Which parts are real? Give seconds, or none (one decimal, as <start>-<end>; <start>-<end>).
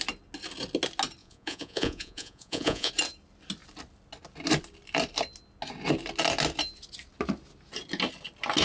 0.0-1.2; 2.9-8.6